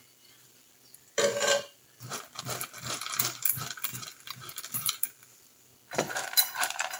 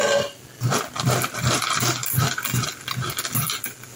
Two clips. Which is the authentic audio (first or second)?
second